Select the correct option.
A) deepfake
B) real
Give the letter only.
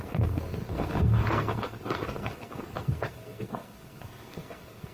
A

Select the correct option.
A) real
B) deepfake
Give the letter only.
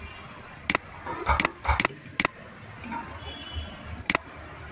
A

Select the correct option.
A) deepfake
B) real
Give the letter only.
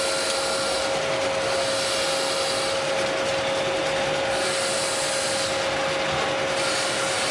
B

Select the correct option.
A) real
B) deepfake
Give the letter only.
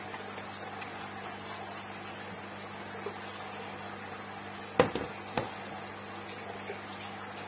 A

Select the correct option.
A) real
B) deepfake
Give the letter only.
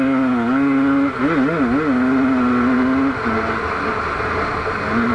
A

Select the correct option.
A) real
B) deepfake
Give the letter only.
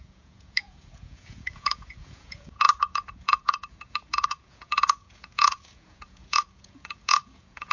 B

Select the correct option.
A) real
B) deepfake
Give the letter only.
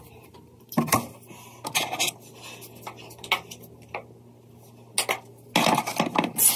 A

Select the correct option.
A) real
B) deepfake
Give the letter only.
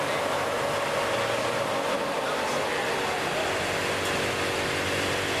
A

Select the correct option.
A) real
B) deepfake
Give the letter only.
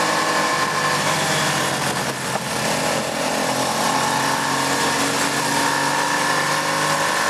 A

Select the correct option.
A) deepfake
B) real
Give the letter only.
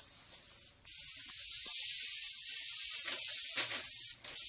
B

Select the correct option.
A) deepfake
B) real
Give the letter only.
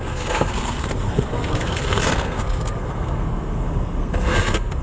A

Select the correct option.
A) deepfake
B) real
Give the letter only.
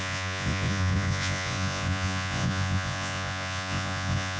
A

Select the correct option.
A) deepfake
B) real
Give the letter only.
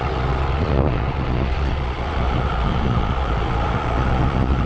A